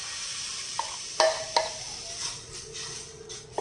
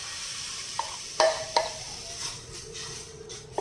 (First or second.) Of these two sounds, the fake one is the second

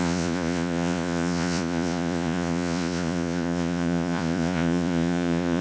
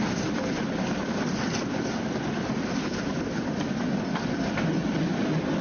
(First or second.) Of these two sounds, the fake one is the first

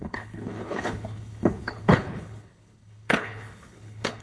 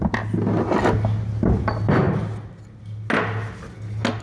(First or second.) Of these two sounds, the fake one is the first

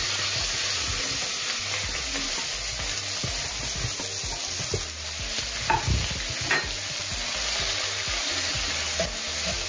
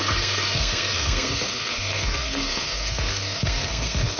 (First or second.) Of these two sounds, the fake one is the second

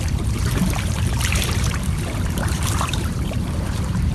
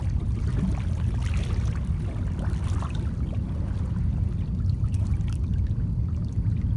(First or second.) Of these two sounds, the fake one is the first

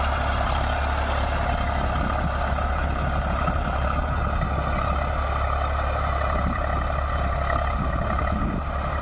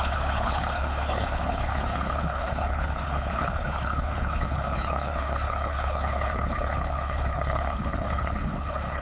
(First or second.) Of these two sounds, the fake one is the second